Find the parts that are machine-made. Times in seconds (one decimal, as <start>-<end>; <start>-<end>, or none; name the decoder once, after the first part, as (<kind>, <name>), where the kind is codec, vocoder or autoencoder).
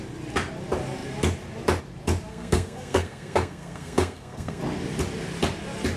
2.3-4.6 (codec, SNAC)